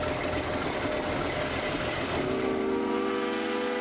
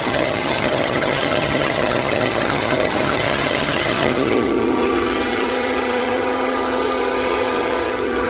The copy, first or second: second